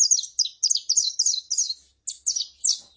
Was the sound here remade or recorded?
recorded